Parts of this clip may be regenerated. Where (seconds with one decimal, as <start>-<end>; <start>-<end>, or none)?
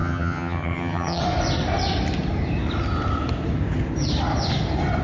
0.0-1.2